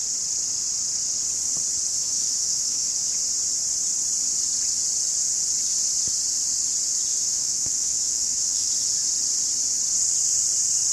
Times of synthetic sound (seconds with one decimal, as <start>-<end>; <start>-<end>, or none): 1.9-2.9; 7.1-8.7

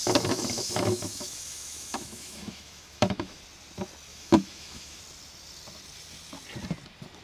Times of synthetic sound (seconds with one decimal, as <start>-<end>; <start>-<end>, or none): 0.0-3.4; 4.1-5.0

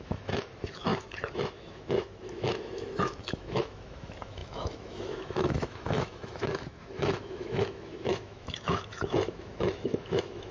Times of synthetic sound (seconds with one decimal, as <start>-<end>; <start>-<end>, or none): 0.0-10.5

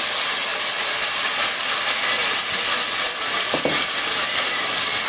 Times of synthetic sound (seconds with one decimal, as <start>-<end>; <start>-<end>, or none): none

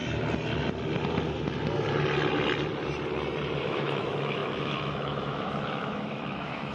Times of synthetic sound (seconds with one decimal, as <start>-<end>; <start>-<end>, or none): 3.6-6.7

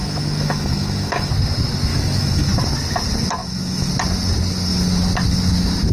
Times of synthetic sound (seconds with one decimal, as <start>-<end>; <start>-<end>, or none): 0.0-1.3; 1.9-2.5; 3.4-3.9

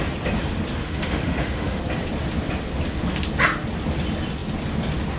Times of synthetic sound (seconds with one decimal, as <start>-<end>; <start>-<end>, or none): 0.8-1.8

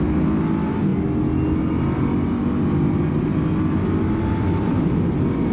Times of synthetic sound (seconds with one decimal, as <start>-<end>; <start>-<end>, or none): none